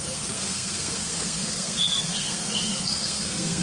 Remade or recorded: remade